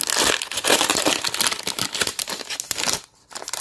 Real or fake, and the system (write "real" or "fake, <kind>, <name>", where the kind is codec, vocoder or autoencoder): real